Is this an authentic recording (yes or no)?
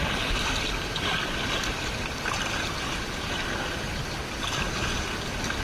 yes